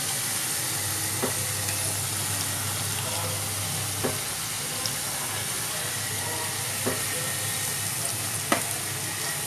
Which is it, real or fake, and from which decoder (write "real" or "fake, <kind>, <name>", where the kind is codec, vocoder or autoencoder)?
real